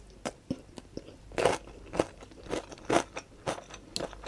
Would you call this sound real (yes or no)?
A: yes